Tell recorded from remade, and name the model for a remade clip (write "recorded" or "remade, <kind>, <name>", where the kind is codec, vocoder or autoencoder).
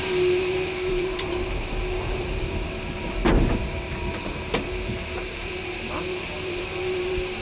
remade, vocoder, BigVGAN v2